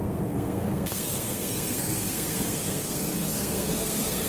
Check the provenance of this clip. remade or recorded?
remade